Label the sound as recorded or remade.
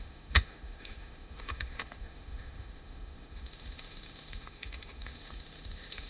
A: remade